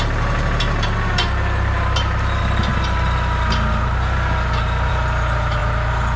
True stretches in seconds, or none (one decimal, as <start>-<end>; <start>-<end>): 0.0-6.2